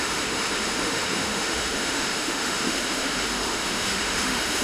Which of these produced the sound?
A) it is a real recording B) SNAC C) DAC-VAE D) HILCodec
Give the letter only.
C